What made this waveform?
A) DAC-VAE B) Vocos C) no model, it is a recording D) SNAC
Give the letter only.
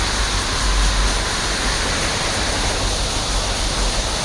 C